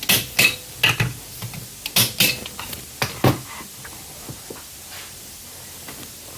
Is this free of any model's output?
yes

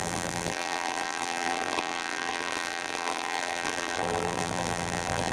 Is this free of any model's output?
no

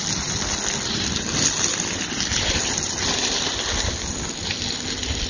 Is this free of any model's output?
yes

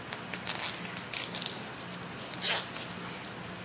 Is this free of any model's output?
yes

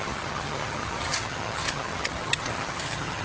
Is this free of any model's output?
no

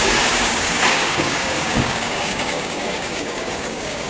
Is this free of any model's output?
no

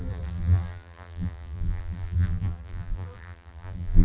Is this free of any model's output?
no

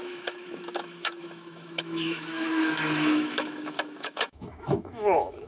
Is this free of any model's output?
no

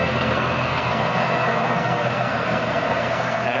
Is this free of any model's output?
no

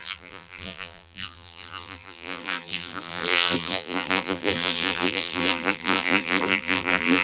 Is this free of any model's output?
no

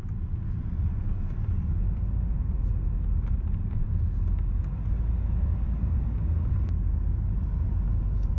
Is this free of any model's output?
yes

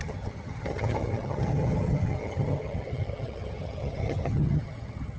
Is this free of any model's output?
no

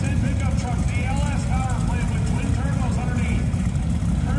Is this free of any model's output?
yes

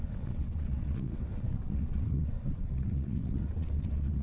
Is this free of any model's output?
no